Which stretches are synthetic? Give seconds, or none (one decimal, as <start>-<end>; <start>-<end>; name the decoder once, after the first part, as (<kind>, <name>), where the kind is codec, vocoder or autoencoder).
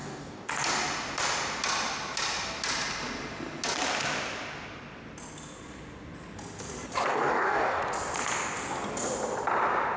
0.0-0.5 (codec, DAC); 7.1-7.8